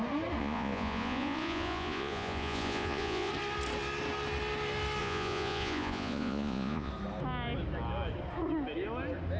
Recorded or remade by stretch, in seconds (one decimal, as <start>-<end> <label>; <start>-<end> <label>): 0.0-0.4 recorded; 0.4-3.3 remade; 3.3-5.0 recorded; 5.0-6.9 remade; 6.9-9.4 recorded